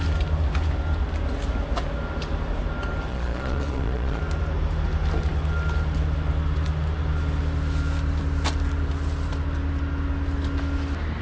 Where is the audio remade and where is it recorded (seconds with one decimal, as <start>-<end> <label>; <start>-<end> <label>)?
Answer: 0.0-3.1 recorded; 3.1-4.2 remade; 4.2-11.2 recorded